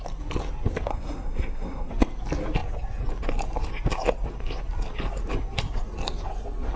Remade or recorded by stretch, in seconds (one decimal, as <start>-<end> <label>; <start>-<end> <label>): 0.0-0.9 recorded; 0.9-1.9 remade; 1.9-6.8 recorded